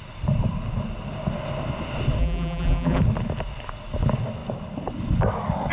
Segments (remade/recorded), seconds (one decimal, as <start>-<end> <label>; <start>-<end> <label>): 0.0-2.2 recorded; 2.2-3.0 remade; 3.0-5.7 recorded